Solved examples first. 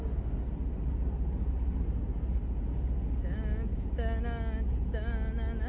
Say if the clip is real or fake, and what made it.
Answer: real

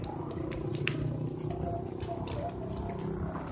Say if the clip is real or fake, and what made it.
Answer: real